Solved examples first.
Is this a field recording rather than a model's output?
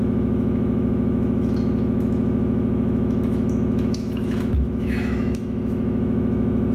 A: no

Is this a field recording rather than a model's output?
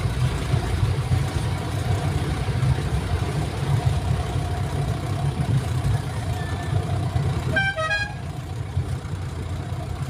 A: no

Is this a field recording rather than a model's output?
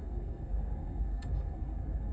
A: no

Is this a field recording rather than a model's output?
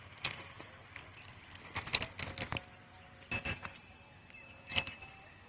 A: yes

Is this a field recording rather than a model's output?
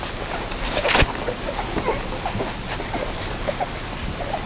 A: yes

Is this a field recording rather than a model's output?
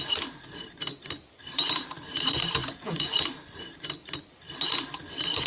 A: yes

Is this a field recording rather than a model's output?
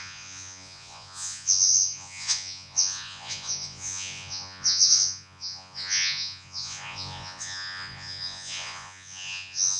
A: no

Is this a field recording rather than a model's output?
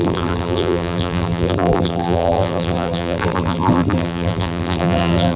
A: no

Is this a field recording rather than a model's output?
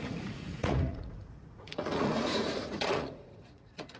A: no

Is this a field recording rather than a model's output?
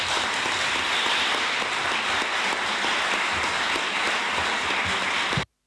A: yes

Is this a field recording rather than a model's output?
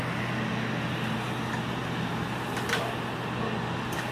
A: yes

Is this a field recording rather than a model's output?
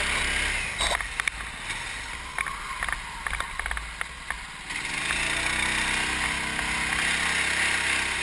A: yes